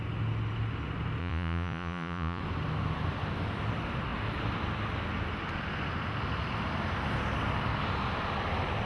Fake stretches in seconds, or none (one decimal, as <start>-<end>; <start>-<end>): 1.2-2.4